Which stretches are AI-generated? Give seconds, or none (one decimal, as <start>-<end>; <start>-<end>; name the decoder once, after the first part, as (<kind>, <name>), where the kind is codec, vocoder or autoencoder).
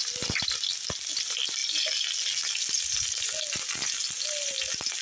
none